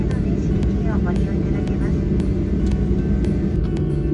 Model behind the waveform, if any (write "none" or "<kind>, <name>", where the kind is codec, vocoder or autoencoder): none